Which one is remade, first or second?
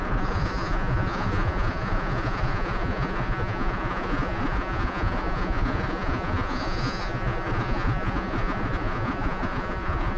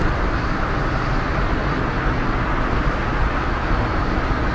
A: first